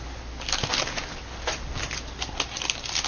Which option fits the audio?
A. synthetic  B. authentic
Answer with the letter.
B